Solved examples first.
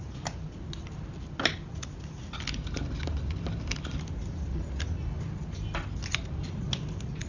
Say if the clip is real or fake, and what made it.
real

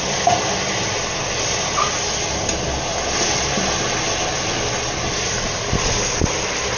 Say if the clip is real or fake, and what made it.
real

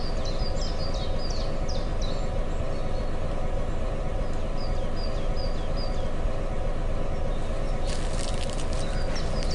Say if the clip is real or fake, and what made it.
fake, vocoder, BigVGAN v2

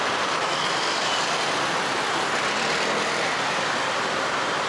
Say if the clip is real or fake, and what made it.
real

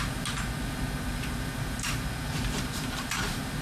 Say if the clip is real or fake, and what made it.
fake, vocoder, BigVGAN v2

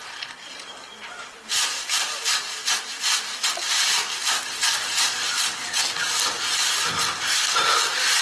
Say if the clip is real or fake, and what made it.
real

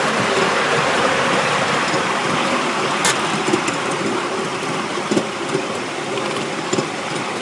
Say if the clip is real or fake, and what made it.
real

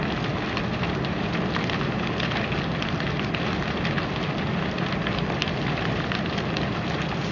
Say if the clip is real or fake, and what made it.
real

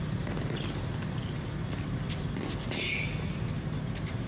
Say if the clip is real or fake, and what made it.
real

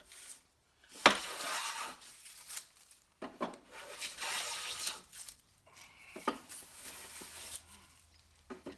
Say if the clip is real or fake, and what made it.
real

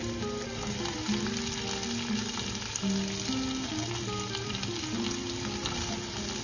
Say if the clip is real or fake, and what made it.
real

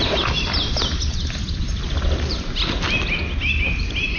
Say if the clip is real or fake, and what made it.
real